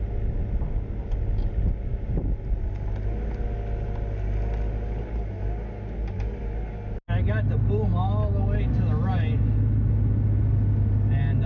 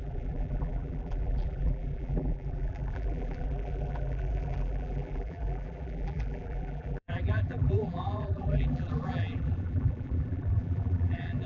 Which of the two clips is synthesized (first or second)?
second